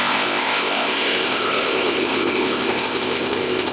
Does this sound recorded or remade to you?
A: remade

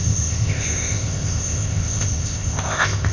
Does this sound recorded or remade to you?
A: remade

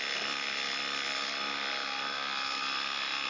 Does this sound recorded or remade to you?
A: recorded